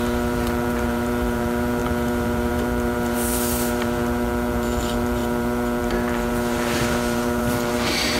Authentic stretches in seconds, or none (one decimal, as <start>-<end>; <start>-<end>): none